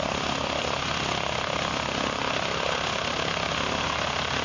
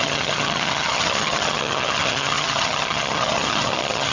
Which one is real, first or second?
first